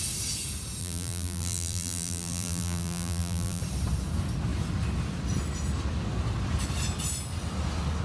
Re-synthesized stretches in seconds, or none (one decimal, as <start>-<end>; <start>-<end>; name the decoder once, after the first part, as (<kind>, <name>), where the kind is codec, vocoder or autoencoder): 0.8-3.6 (vocoder, BigVGAN v2)